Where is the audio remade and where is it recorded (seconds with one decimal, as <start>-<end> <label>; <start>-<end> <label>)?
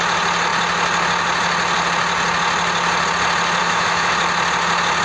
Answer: 0.0-3.6 recorded; 3.6-4.1 remade; 4.1-5.0 recorded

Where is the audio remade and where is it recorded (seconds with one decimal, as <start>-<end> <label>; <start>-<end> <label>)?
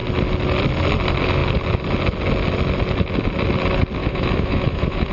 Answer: 0.0-4.0 recorded; 4.0-5.1 remade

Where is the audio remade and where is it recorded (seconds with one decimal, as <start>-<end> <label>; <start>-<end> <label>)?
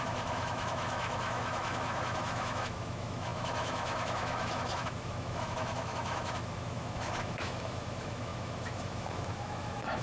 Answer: 0.0-10.0 remade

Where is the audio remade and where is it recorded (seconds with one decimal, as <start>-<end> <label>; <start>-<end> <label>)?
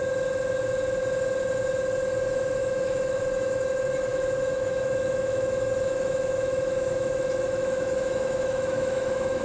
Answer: 0.0-2.6 recorded; 2.6-3.2 remade; 3.2-4.1 recorded; 4.1-9.4 remade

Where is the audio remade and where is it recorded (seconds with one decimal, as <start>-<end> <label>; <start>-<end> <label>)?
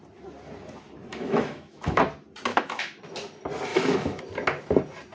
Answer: 0.0-1.1 recorded; 1.1-2.0 remade; 2.0-2.5 recorded; 2.5-3.0 remade; 3.0-3.7 recorded; 3.7-4.2 remade; 4.2-5.1 recorded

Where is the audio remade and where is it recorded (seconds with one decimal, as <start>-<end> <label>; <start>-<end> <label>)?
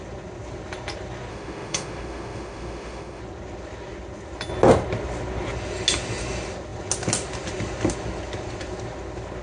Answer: 0.0-1.3 recorded; 1.3-3.2 remade; 3.2-9.4 recorded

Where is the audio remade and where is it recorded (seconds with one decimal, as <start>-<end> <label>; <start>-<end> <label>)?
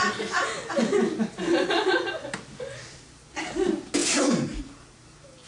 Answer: 0.0-5.5 recorded